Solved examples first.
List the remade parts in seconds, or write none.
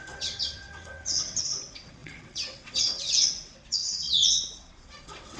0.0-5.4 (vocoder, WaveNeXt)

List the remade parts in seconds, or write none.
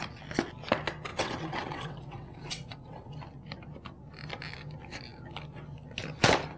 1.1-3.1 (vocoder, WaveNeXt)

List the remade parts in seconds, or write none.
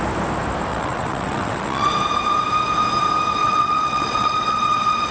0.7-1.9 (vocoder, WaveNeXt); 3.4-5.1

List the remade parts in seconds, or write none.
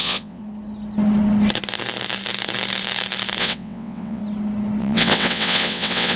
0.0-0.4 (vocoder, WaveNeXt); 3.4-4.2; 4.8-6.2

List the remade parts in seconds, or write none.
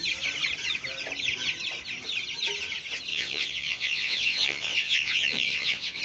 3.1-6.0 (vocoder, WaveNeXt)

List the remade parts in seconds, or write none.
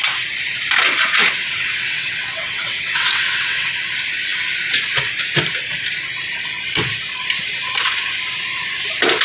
1.4-3.7 (vocoder, WaveNeXt)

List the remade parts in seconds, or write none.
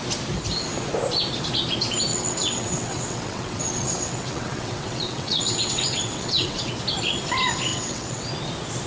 2.1-6.7 (vocoder, WaveNeXt); 7.7-8.3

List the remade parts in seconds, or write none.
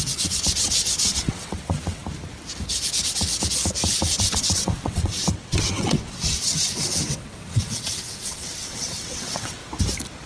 0.0-2.0 (vocoder, WaveNeXt); 4.2-9.6